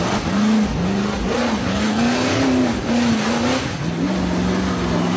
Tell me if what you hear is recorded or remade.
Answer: recorded